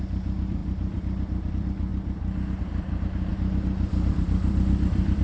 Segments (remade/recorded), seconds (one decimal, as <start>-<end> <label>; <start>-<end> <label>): 0.0-1.9 remade; 1.9-2.6 recorded; 2.6-3.3 remade; 3.3-4.1 recorded; 4.1-5.2 remade